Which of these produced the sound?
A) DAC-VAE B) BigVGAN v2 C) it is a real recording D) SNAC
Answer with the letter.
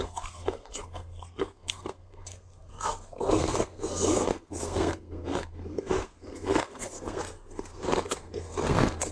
D